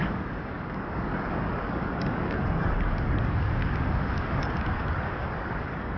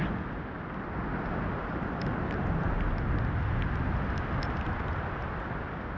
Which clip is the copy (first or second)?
first